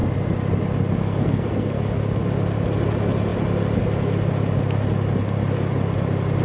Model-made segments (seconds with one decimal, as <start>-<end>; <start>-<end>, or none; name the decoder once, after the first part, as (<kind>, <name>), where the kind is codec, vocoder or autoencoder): 1.0-1.8 (codec, SNAC)